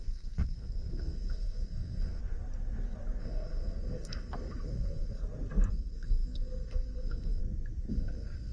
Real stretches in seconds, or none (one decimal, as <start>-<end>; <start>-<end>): 2.2-3.2; 5.2-5.7; 7.4-7.9